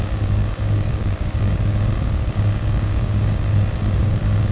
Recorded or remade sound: remade